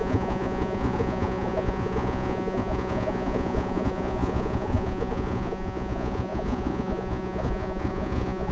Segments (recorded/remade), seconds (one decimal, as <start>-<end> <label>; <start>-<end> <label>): 0.0-8.5 remade